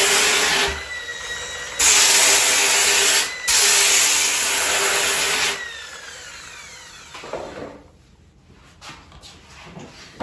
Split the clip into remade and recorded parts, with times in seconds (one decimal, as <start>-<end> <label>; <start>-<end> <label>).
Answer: 0.0-10.2 recorded